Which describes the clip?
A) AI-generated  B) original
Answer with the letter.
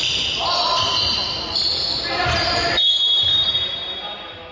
B